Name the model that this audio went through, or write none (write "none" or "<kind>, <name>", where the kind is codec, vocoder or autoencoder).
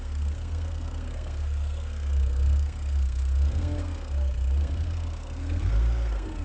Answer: codec, SNAC